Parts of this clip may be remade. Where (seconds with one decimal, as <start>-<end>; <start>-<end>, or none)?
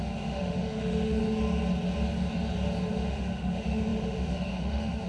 0.0-1.2; 2.9-5.1